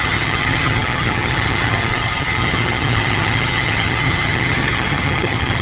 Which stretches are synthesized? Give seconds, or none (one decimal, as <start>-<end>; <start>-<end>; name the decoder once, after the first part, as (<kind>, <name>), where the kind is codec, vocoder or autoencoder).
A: 0.0-5.6 (vocoder, HiFi-GAN)